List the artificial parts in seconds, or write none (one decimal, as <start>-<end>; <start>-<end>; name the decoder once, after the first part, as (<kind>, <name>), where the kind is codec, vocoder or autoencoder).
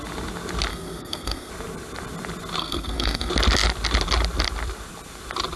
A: 0.7-1.5 (codec, SNAC); 2.6-3.3